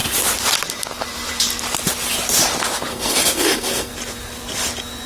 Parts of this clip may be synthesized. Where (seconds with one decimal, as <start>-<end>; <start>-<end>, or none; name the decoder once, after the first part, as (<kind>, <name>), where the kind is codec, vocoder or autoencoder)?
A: 2.9-3.9 (codec, SNAC)